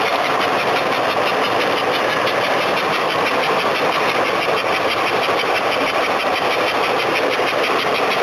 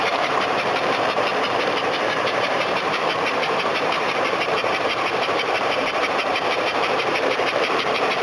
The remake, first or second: second